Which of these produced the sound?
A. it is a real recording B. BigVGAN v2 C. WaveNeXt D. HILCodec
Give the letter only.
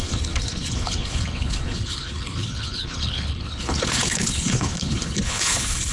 D